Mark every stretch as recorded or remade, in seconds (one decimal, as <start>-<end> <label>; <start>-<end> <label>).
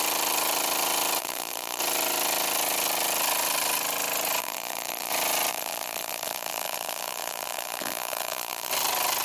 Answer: 0.0-1.2 recorded; 1.2-1.8 remade; 1.8-4.4 recorded; 4.4-5.1 remade; 5.1-5.5 recorded; 5.5-8.7 remade; 8.7-9.2 recorded